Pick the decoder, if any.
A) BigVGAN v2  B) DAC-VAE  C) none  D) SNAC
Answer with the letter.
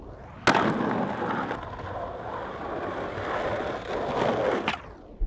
C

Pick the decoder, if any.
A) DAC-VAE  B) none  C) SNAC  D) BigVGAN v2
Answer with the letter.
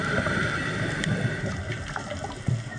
B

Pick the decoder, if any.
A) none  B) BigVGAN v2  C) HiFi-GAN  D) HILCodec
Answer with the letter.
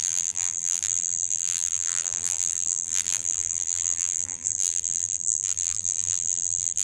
B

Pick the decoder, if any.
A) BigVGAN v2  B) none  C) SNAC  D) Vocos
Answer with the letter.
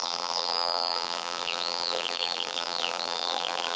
A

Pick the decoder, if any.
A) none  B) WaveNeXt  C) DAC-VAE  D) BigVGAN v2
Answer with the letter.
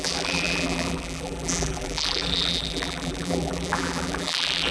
D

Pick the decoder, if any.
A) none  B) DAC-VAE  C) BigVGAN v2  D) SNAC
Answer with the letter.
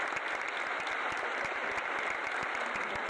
C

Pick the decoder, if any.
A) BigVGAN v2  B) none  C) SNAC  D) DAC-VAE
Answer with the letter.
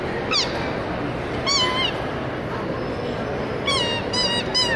B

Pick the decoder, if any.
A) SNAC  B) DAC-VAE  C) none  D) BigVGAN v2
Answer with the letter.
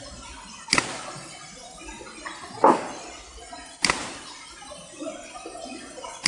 C